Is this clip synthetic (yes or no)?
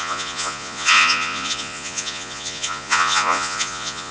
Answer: yes